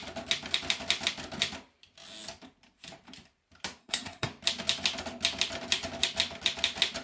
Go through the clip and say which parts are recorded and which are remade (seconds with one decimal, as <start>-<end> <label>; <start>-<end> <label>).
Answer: 0.0-3.8 recorded; 3.8-4.3 remade; 4.3-7.0 recorded